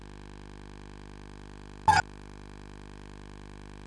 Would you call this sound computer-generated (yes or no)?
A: no